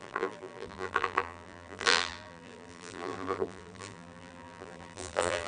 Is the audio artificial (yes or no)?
yes